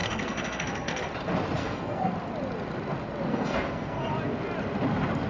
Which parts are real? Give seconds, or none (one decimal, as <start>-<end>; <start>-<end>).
1.0-1.6; 2.1-3.3; 4.1-5.3